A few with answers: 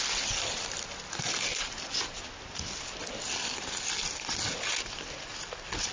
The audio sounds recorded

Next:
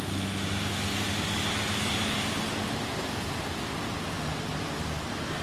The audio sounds recorded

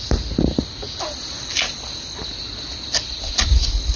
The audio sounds recorded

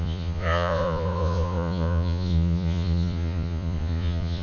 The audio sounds remade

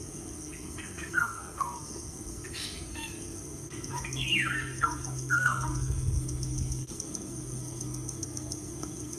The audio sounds remade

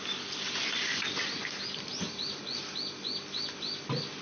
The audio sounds recorded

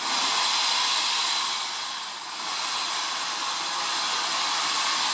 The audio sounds recorded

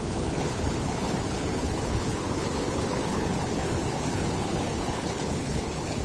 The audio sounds remade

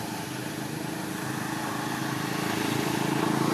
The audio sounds recorded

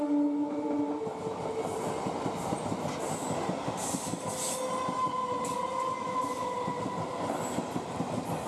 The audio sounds recorded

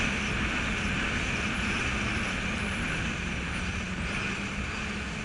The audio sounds recorded